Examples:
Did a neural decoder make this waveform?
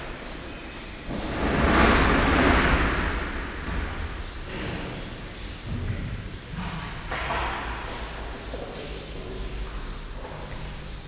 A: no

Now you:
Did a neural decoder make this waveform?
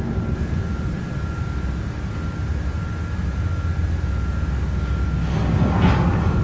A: no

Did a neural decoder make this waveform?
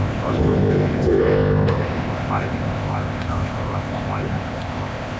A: yes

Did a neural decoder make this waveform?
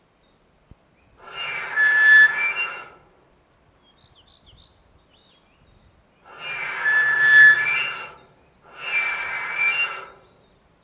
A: no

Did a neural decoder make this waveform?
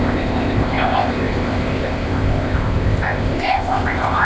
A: yes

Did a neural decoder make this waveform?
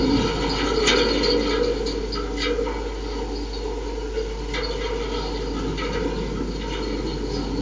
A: no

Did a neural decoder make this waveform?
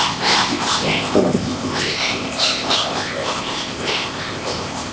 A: yes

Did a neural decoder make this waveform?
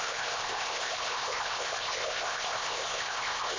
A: yes